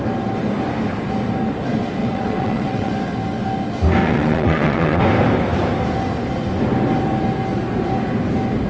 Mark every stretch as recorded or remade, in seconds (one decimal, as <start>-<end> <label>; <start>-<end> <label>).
0.0-2.0 recorded; 2.0-2.9 remade; 2.9-4.0 recorded; 4.0-5.0 remade; 5.0-8.7 recorded